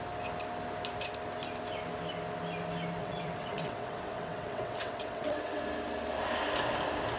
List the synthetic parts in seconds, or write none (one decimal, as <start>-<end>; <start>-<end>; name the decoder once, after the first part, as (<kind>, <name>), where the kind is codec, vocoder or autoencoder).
3.0-5.6 (vocoder, WaveNeXt)